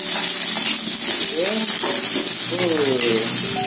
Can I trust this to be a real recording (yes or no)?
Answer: yes